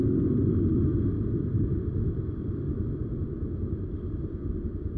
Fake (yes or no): no